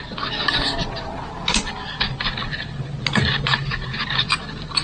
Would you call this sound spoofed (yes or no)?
no